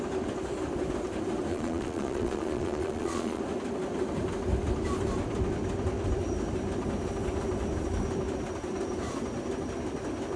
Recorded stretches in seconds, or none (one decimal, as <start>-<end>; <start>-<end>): 0.0-1.5; 3.4-10.4